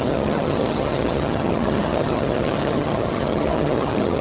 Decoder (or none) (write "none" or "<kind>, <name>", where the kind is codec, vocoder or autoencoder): vocoder, HiFi-GAN